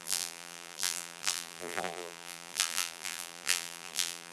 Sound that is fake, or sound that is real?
fake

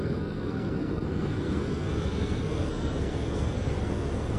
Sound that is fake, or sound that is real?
fake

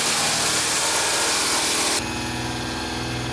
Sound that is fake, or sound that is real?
real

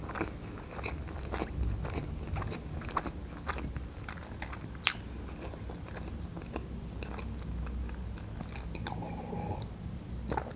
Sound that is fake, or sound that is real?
real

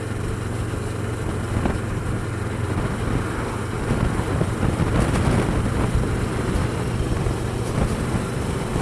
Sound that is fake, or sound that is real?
real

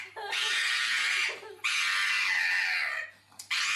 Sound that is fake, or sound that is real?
real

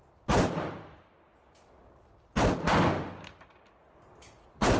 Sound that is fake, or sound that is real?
real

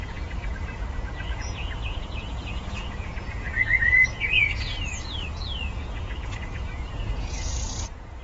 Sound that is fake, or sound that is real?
fake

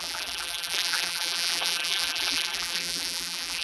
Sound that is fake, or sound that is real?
fake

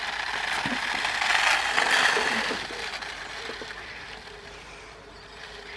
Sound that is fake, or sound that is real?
real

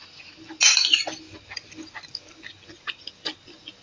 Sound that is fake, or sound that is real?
real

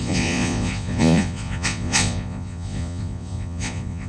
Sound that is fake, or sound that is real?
fake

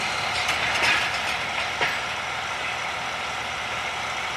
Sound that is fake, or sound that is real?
real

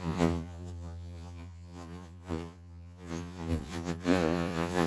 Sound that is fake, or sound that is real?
fake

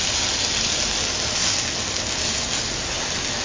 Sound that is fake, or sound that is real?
real